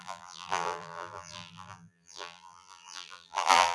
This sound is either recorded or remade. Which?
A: remade